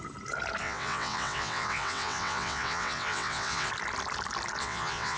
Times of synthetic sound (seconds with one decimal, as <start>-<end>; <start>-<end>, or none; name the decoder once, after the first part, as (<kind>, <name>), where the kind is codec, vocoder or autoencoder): 0.6-3.7 (vocoder, WaveNeXt); 4.6-5.2